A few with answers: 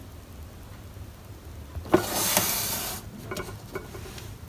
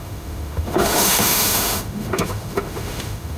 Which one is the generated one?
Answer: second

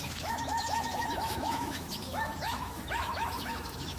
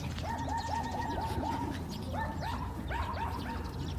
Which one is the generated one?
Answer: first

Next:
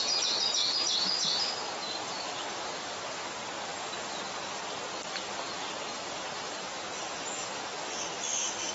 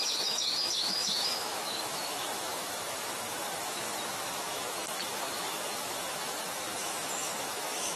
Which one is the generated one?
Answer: second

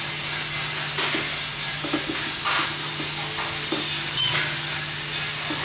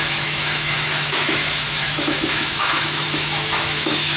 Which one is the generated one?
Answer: second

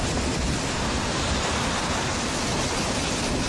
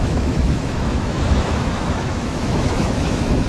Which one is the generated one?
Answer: second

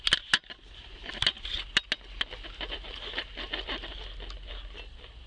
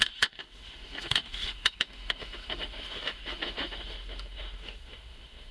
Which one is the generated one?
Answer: second